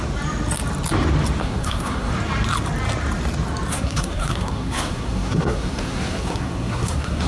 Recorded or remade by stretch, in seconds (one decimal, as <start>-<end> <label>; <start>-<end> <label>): 0.0-1.4 recorded; 1.4-2.1 remade; 2.1-3.7 recorded; 3.7-7.3 remade